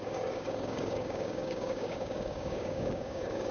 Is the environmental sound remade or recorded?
remade